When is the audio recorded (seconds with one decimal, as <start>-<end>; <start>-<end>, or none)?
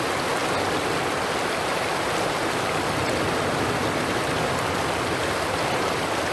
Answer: 0.0-6.3